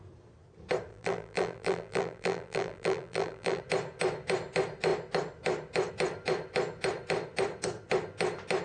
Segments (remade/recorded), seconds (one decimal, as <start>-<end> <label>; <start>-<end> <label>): 0.0-0.9 recorded; 0.9-3.6 remade; 3.6-8.6 recorded